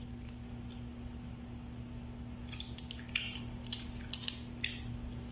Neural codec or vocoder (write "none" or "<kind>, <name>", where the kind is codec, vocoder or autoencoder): none